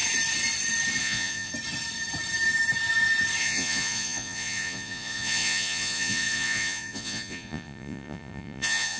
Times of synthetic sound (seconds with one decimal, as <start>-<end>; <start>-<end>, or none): 1.0-1.5; 3.4-9.0